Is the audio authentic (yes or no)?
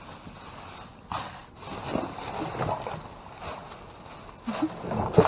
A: yes